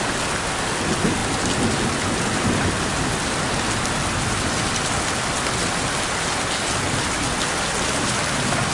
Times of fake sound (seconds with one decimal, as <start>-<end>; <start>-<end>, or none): none